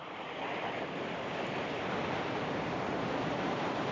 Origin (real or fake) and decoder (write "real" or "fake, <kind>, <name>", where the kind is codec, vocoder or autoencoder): real